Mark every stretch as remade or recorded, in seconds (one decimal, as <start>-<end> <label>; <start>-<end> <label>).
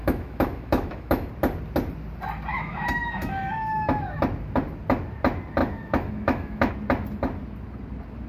0.0-1.3 remade; 1.3-2.5 recorded; 2.5-4.2 remade; 4.2-5.6 recorded; 5.6-6.7 remade; 6.7-8.3 recorded